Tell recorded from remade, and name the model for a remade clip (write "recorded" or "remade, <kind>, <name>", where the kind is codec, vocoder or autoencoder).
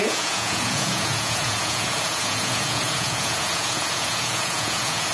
remade, vocoder, Vocos